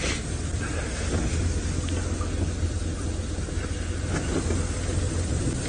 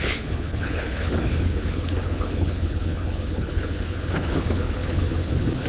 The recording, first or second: first